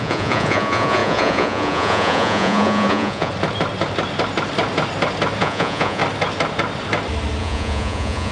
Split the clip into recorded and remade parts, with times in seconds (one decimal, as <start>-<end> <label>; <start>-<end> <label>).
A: 0.0-3.3 remade; 3.3-5.4 recorded; 5.4-6.0 remade; 6.0-7.4 recorded; 7.4-8.3 remade